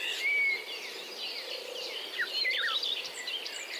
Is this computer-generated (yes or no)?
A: no